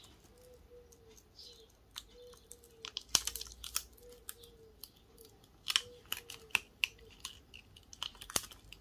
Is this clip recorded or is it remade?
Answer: recorded